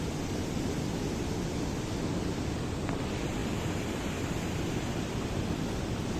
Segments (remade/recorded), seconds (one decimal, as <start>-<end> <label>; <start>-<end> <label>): 0.0-6.2 recorded